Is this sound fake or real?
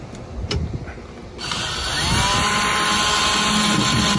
real